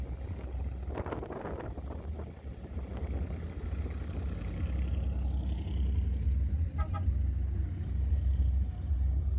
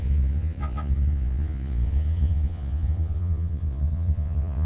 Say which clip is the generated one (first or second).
second